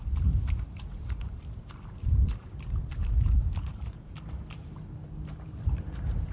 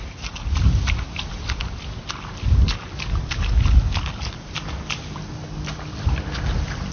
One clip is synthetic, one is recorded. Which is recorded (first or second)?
second